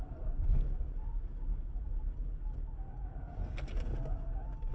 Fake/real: real